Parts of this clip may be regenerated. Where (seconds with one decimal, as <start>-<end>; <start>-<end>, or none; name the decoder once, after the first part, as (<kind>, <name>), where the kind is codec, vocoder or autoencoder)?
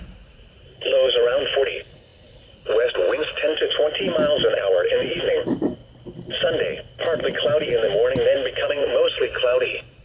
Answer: 0.0-2.1 (vocoder, BigVGAN v2); 5.2-5.8; 8.7-10.0